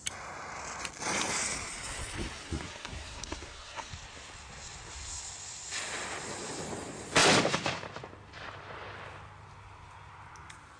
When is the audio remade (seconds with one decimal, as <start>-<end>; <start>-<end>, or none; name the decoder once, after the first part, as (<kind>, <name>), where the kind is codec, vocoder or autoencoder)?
2.4-3.9 (codec, SNAC)